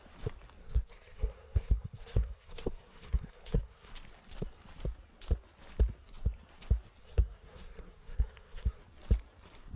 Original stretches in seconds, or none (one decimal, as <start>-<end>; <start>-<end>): 0.0-0.6; 3.9-7.0; 8.8-9.8